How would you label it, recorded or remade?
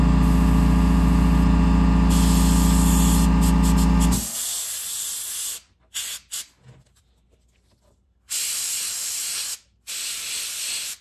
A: recorded